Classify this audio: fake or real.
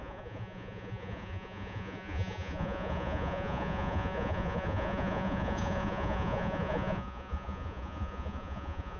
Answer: fake